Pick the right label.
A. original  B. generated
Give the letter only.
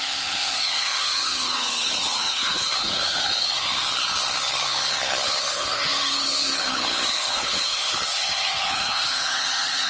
B